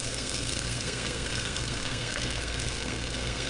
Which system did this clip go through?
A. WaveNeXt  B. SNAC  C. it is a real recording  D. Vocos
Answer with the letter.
B